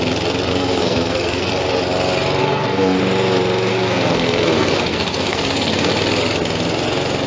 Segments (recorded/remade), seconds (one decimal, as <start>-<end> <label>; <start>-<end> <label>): 0.0-0.5 recorded; 0.5-1.5 remade; 1.5-2.4 recorded; 2.4-3.0 remade; 3.0-3.7 recorded; 3.7-5.9 remade; 5.9-7.3 recorded